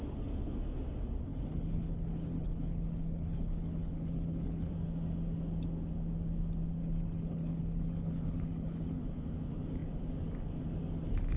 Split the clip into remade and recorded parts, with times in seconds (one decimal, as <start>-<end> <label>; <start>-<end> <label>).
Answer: 0.0-1.3 recorded; 1.3-4.7 remade; 4.7-6.8 recorded; 6.8-9.0 remade; 9.0-11.4 recorded